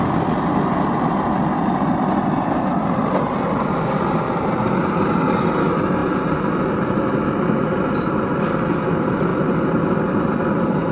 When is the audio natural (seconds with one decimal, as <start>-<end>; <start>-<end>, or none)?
0.0-10.9